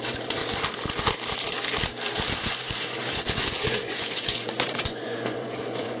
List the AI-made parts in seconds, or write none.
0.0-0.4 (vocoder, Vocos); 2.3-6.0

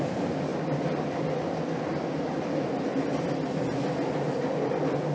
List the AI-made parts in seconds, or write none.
none

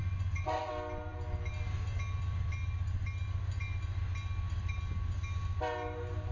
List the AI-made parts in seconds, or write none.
0.0-0.7 (vocoder, Vocos)

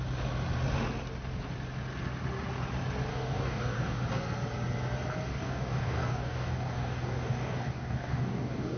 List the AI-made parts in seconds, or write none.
3.1-4.0 (codec, DAC); 5.3-8.8